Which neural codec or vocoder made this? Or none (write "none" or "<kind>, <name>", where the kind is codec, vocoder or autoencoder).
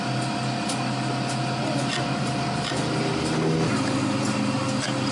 none